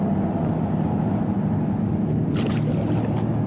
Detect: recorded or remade recorded